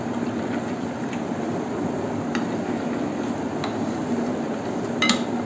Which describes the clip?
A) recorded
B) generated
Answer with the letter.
A